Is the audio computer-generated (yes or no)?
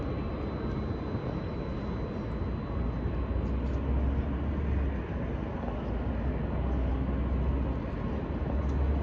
no